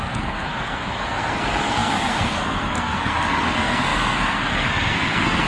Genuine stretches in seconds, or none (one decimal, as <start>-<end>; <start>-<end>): none